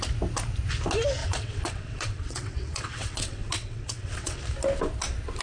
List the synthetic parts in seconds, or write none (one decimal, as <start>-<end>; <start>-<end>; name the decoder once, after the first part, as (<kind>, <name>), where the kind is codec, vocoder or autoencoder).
1.2-4.4 (vocoder, WaveNeXt)